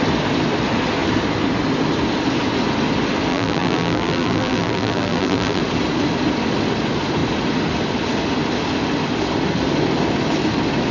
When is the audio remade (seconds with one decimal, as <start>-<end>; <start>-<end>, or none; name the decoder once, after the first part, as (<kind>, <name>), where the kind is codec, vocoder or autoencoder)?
3.3-5.6 (vocoder, BigVGAN v2)